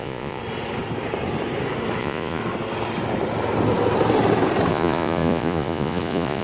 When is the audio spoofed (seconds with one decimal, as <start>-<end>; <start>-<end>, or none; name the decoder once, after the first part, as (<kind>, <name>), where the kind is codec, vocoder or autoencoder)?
0.0-0.4 (vocoder, Vocos); 2.0-2.4; 4.7-6.4